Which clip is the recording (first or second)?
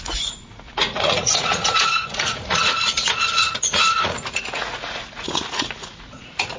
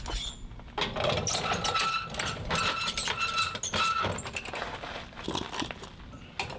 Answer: second